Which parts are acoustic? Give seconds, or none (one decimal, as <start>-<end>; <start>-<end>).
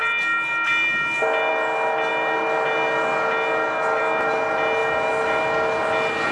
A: 0.0-6.3